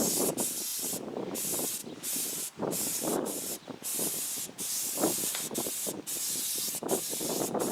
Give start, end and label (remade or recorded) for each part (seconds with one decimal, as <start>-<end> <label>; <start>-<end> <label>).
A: 0.0-1.8 recorded; 1.8-3.5 remade; 3.5-7.7 recorded